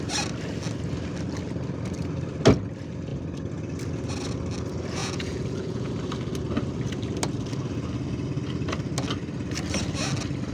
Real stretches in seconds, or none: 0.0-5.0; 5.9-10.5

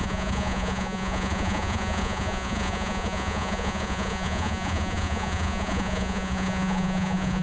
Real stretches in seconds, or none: none

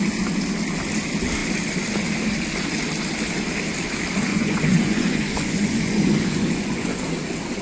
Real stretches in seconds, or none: 0.0-4.3; 7.0-7.6

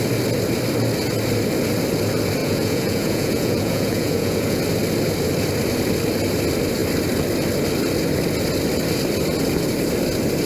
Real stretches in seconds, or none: 0.0-2.4; 4.6-10.5

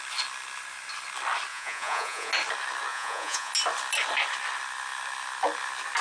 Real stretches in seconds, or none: 0.0-1.5; 2.3-2.9; 3.5-6.0